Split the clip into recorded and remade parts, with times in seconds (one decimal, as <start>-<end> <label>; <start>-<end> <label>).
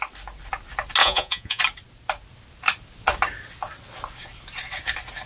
0.0-1.0 recorded; 1.0-1.6 remade; 1.6-5.3 recorded